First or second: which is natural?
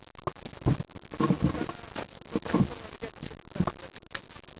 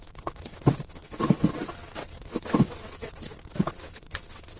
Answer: first